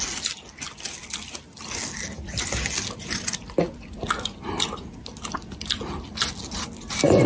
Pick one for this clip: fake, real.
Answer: real